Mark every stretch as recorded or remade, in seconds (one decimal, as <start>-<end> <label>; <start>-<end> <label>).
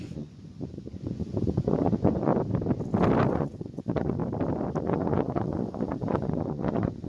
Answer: 0.0-2.3 remade; 2.3-3.3 recorded; 3.3-4.2 remade; 4.2-4.8 recorded; 4.8-7.1 remade